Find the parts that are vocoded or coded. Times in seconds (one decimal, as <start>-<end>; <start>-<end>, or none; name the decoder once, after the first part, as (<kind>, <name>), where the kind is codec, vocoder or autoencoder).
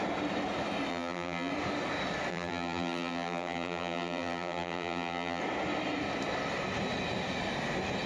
0.9-1.5 (vocoder, BigVGAN v2); 2.3-5.4